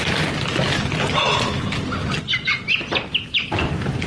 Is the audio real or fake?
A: real